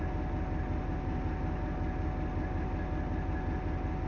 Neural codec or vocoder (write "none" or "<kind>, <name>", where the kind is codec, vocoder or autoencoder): none